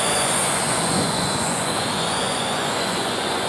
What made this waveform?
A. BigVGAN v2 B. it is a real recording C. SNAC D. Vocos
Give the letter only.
D